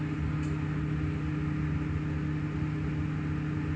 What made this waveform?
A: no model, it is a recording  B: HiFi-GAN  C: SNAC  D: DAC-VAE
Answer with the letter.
A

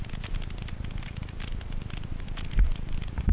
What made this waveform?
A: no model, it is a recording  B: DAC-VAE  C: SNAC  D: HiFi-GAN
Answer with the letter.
A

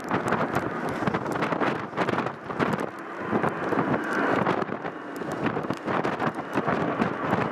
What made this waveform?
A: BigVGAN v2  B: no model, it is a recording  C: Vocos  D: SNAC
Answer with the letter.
B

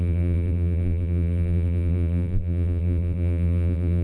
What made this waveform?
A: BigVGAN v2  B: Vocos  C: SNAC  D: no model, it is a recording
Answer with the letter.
A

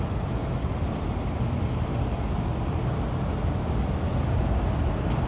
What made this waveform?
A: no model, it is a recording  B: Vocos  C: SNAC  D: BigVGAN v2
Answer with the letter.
A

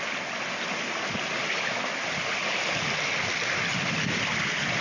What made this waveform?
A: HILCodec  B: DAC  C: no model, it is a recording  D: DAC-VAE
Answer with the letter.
C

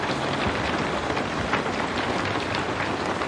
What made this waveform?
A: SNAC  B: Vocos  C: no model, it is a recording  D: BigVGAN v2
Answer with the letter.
C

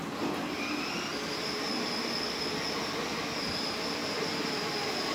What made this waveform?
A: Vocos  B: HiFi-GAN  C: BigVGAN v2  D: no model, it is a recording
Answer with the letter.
D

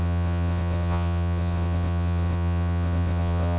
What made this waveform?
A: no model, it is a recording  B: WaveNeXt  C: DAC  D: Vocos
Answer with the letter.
B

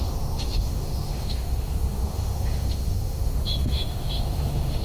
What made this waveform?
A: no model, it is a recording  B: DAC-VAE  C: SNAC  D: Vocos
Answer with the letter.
B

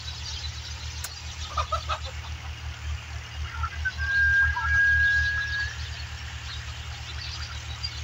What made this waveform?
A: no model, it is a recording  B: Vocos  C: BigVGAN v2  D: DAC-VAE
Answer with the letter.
A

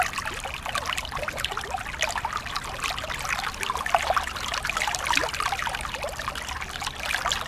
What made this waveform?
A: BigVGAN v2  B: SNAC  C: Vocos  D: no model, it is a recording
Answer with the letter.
D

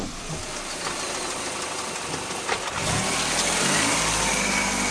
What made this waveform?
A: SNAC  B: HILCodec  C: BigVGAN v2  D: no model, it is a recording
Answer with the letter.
D